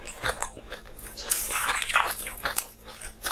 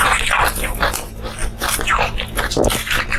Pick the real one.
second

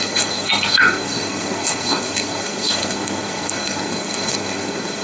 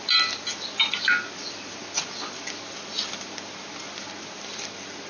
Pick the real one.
second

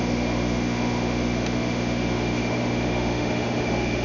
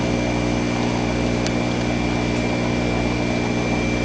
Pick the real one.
second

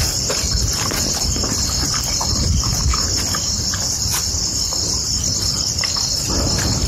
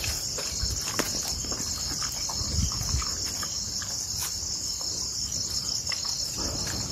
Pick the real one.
second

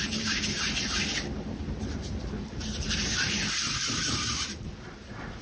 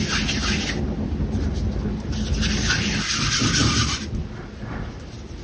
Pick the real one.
second